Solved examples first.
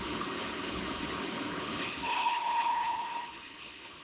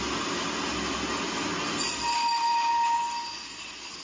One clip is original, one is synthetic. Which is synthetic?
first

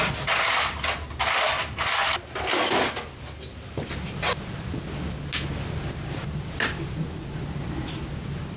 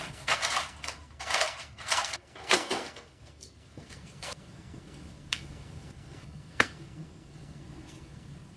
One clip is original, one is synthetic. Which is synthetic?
second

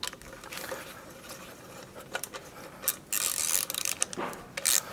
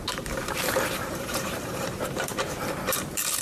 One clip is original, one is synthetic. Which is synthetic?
second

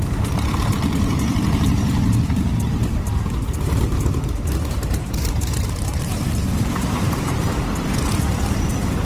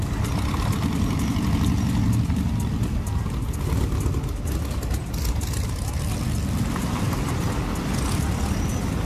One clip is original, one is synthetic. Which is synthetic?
first